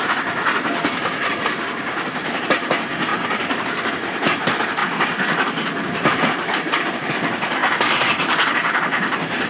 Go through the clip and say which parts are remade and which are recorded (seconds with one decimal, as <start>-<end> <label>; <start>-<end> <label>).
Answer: 0.0-3.1 recorded; 3.1-3.8 remade; 3.8-4.8 recorded; 4.8-6.1 remade; 6.1-9.5 recorded